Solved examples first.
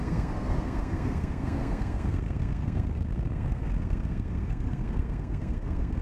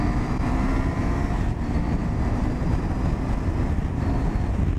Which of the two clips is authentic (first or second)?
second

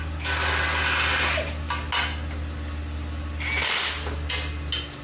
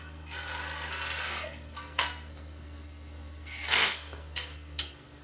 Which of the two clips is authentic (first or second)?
first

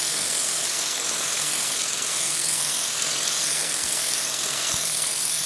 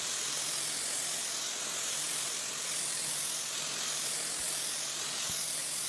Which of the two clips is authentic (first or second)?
second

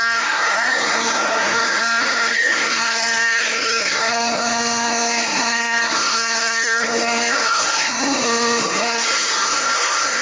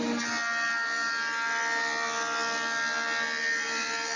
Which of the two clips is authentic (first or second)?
second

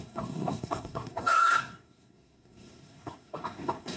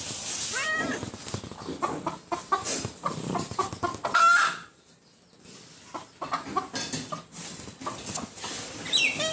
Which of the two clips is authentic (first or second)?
second